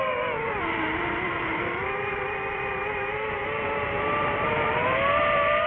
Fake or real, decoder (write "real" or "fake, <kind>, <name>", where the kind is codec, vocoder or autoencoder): fake, vocoder, BigVGAN v2